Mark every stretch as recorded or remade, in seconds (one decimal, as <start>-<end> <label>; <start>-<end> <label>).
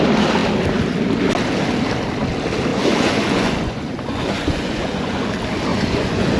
0.0-2.7 recorded; 2.7-5.3 remade; 5.3-5.7 recorded; 5.7-6.4 remade